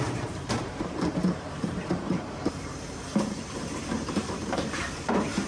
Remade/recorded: remade